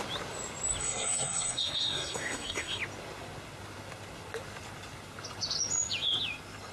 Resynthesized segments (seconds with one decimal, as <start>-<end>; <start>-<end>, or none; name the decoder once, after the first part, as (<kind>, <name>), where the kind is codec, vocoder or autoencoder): 0.8-2.8 (codec, SNAC)